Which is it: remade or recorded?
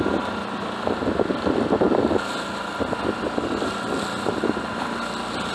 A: recorded